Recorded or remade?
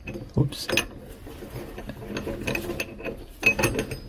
recorded